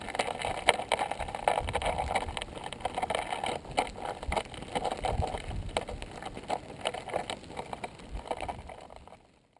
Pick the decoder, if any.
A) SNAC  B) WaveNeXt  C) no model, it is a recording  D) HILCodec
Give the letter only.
C